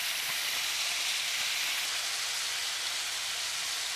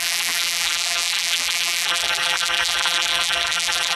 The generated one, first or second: second